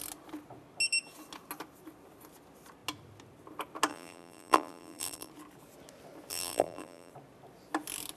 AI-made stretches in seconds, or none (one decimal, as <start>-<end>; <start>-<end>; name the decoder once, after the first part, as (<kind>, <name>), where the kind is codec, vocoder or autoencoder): 3.9-5.3 (vocoder, BigVGAN v2); 6.3-7.1